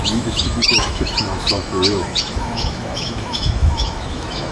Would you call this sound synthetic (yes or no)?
yes